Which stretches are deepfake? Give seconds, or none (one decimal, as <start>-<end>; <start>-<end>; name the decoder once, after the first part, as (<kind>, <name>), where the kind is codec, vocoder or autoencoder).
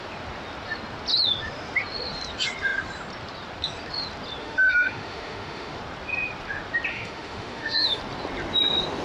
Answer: 4.4-5.8 (autoencoder, DAC-VAE); 6.9-8.0